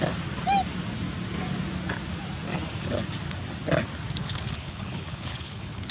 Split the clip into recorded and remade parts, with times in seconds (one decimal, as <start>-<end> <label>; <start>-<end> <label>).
0.0-4.2 recorded; 4.2-5.9 remade